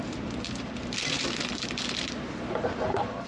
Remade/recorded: remade